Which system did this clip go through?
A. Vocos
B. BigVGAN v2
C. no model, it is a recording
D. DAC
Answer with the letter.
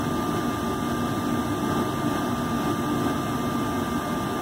C